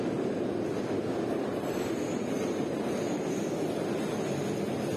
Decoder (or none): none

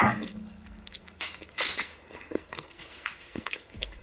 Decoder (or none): codec, SNAC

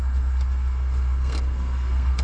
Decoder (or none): codec, SNAC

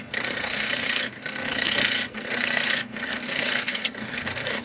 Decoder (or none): codec, SNAC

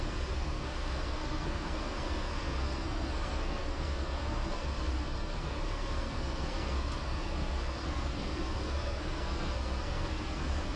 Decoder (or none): codec, SNAC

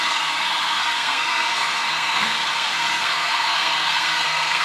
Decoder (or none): codec, SNAC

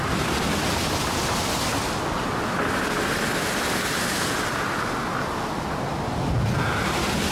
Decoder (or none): none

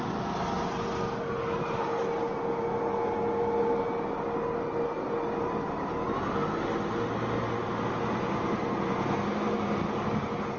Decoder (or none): none